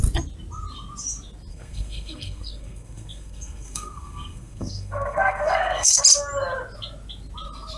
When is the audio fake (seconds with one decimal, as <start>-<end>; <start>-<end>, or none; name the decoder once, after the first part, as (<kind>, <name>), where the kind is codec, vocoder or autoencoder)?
1.5-6.0 (codec, SNAC)